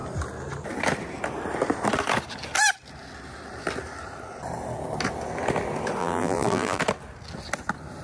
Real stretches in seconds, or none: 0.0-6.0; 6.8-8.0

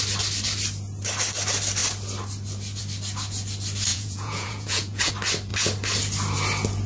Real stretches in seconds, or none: 0.0-3.9; 5.1-6.9

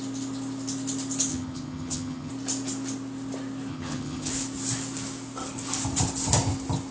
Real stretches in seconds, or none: 0.0-1.3; 2.3-3.7; 4.3-6.9

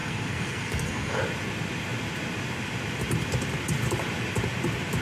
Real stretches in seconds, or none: 1.2-5.0

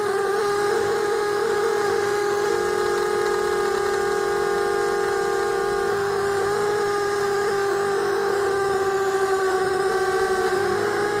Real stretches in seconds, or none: 2.5-5.9; 9.9-10.5

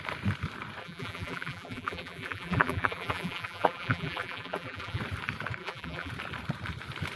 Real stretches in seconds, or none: 0.0-0.8; 5.0-5.6; 6.1-7.2